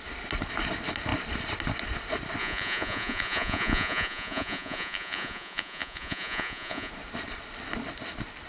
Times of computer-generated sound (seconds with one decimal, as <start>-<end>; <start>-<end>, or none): 2.4-6.9